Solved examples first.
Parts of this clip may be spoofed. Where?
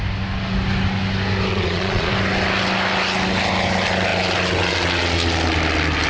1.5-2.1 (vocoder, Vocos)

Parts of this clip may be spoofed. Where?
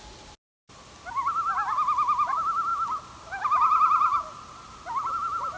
none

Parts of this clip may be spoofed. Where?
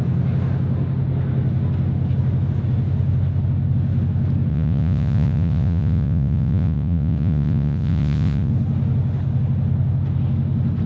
4.5-8.5 (vocoder, Vocos)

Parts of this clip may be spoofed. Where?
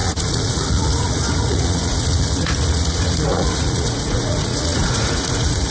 0.0-5.7 (vocoder, Vocos)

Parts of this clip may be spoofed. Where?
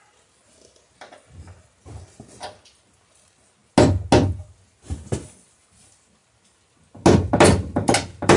none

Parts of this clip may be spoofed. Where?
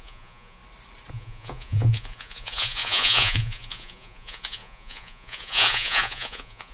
0.0-0.6 (vocoder, Vocos); 1.1-6.7